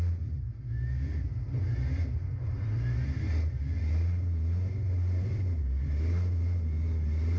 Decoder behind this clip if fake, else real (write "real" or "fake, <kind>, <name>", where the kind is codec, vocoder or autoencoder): real